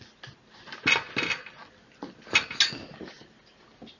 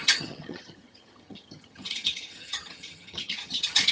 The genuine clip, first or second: first